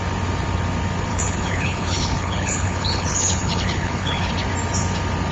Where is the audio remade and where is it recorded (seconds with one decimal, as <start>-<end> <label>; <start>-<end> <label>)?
0.0-1.1 recorded; 1.1-4.3 remade; 4.3-5.3 recorded